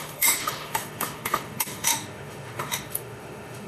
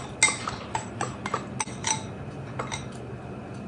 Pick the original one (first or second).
second